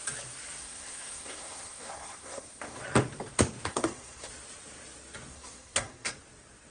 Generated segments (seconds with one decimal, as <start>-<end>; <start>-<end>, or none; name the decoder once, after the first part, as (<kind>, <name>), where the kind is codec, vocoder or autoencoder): 0.6-2.8 (codec, SNAC); 3.7-4.3; 5.3-6.1

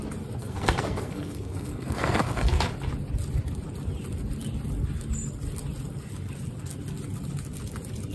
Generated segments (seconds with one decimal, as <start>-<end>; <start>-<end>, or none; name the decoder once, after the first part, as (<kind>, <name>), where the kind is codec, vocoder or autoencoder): 0.4-2.7 (codec, SNAC)

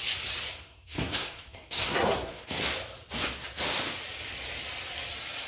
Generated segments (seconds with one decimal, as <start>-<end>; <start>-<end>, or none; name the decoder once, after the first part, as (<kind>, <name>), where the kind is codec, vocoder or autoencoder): 0.5-2.6 (codec, SNAC)

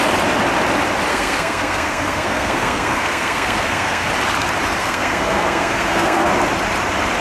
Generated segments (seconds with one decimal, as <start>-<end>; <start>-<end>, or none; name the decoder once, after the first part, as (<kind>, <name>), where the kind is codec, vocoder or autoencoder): 1.1-4.1 (codec, SNAC); 4.8-6.3

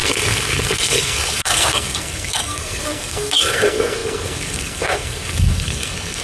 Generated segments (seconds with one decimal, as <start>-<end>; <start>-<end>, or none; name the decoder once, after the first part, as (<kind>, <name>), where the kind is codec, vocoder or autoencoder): 0.0-6.2 (codec, SNAC)

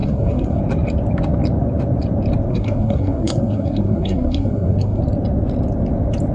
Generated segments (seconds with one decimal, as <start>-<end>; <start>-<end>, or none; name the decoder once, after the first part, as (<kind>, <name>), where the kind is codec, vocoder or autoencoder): 0.0-0.6 (codec, SNAC); 2.5-5.0